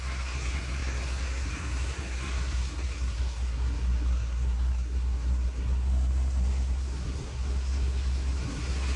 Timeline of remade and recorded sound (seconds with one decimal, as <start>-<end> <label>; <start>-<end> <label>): 0.0-9.0 remade